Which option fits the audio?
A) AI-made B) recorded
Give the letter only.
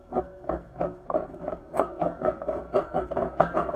A